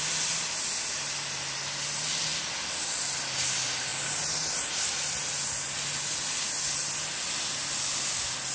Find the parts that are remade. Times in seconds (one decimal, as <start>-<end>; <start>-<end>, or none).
none